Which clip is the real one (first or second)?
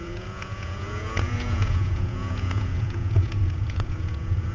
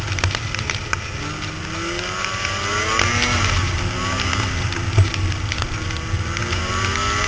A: second